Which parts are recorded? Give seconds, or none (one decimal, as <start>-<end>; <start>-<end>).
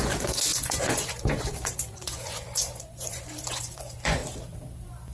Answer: 4.2-5.1